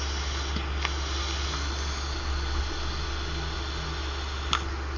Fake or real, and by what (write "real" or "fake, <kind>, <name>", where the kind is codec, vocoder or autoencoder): real